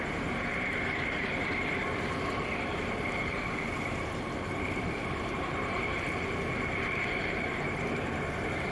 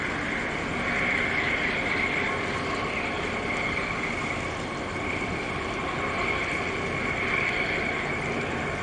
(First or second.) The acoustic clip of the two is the second